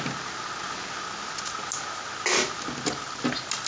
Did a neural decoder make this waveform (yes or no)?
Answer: no